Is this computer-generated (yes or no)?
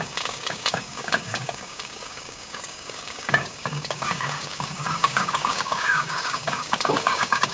yes